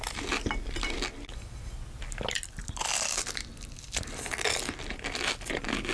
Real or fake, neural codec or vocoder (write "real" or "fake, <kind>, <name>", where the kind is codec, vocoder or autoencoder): real